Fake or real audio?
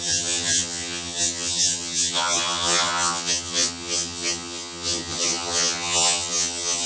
fake